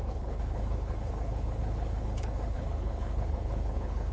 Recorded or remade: remade